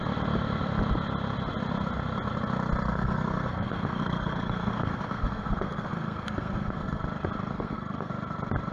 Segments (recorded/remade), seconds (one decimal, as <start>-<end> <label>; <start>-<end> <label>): 0.0-2.9 recorded; 2.9-7.0 remade; 7.0-7.5 recorded; 7.5-8.1 remade; 8.1-8.7 recorded